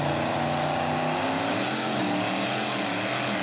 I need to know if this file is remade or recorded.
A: recorded